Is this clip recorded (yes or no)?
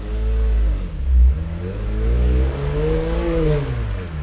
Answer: no